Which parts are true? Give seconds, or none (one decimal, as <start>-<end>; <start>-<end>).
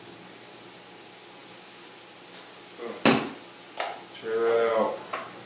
0.0-5.5